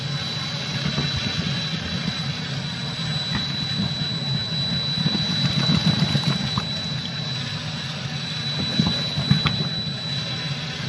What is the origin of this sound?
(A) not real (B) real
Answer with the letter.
B